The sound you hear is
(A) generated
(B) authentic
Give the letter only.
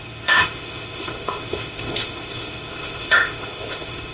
A